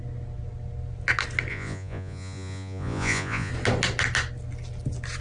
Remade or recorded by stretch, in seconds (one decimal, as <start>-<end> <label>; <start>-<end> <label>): 0.0-1.5 recorded; 1.5-3.5 remade; 3.5-5.2 recorded